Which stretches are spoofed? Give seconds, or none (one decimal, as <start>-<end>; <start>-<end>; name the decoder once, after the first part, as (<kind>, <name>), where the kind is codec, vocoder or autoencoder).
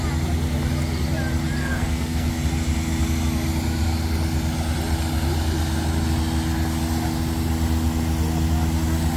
1.6-2.3 (codec, SNAC)